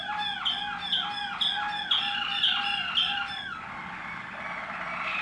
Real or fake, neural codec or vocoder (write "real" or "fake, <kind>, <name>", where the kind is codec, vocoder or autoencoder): real